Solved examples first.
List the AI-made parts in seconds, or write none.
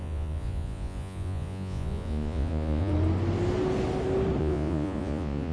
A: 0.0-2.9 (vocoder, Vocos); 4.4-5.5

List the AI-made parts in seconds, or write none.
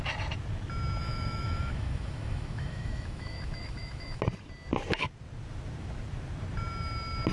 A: 1.0-4.2 (autoencoder, DAC-VAE)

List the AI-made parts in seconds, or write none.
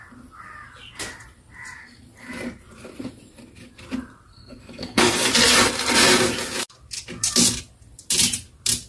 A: 4.3-5.3 (codec, SNAC)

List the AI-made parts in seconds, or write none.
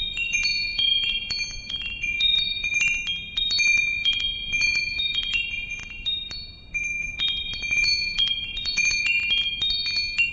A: 0.0-2.7 (vocoder, Vocos); 3.8-5.8; 7.0-9.2